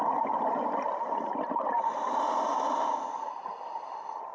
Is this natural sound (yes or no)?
yes